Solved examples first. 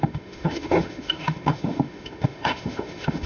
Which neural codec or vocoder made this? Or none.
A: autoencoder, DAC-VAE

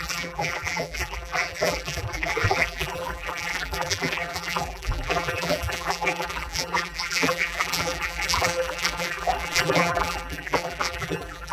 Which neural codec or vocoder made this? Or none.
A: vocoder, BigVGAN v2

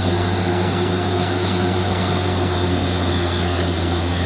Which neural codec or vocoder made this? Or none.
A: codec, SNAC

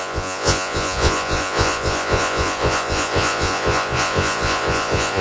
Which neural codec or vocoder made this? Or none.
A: vocoder, Vocos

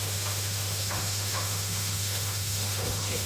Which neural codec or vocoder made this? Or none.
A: autoencoder, DAC-VAE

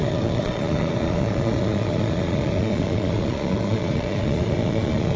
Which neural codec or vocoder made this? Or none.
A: vocoder, Vocos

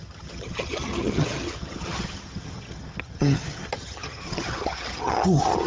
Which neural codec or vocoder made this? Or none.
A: vocoder, HiFi-GAN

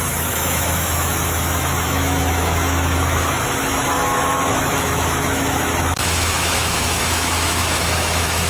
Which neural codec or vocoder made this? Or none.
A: autoencoder, DAC-VAE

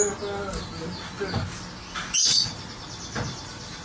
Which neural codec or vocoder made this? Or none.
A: none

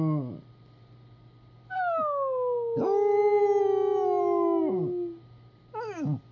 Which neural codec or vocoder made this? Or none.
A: none